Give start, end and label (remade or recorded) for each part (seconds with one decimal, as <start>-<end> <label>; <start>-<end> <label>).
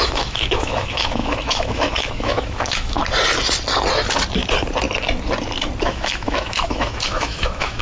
0.0-3.0 remade; 3.0-5.8 recorded; 5.8-7.8 remade